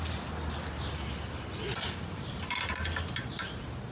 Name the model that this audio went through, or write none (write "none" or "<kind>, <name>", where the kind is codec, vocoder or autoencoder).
none